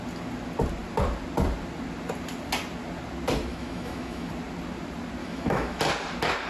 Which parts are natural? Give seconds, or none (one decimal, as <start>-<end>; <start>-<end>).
0.0-3.5; 4.3-5.2; 5.8-6.5